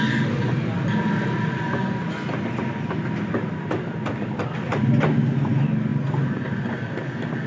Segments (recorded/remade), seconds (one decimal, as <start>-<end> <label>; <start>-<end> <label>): 0.0-7.5 recorded